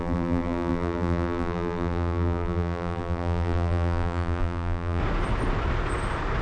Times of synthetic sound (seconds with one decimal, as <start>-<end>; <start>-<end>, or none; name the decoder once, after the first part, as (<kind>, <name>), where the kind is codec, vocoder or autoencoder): 0.0-5.0 (vocoder, BigVGAN v2)